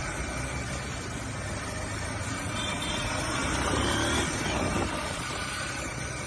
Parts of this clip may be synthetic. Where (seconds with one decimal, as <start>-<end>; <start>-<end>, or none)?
none